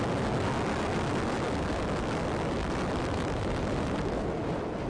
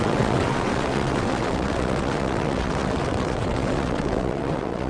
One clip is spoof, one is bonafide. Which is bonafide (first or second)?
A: first